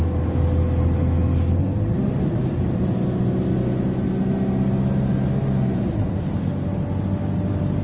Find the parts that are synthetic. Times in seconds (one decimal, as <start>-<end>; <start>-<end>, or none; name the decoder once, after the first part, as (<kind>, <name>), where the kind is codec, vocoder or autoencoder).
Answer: none